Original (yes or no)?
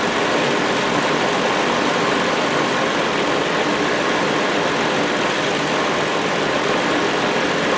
yes